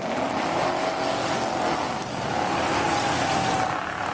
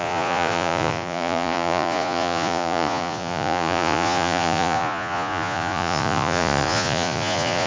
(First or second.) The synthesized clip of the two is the second